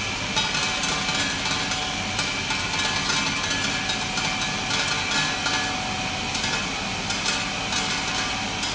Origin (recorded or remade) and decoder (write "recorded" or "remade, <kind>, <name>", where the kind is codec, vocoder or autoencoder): recorded